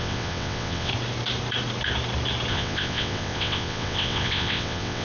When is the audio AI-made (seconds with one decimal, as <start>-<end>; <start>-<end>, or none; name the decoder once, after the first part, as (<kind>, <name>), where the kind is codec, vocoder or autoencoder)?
0.0-0.9 (vocoder, WaveNeXt); 2.5-5.0